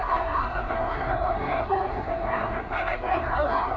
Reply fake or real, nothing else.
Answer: fake